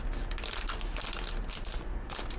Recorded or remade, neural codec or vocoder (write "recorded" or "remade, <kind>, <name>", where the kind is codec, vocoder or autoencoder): recorded